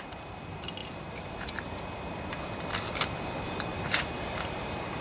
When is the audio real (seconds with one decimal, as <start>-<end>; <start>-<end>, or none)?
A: none